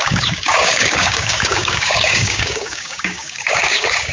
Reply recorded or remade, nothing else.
remade